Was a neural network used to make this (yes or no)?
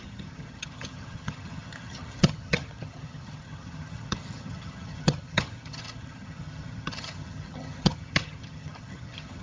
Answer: yes